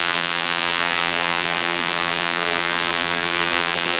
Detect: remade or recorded remade